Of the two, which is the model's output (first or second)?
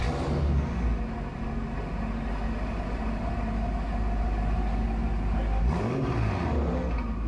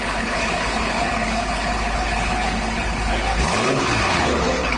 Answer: second